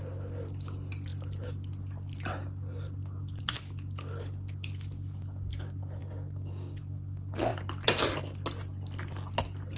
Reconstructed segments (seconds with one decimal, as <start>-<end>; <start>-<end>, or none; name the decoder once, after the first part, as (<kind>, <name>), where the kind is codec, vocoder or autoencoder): 6.0-6.8 (codec, DAC)